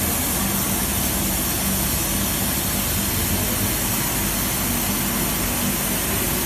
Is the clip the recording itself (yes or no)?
yes